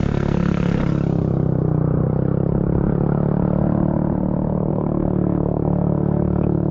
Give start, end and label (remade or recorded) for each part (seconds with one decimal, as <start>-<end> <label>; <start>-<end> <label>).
0.0-0.8 remade; 0.8-4.7 recorded; 4.7-6.7 remade